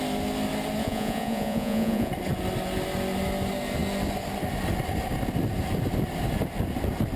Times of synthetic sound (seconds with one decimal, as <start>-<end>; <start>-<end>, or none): 0.8-2.1